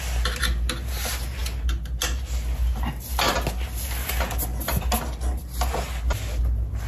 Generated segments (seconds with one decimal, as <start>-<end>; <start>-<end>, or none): none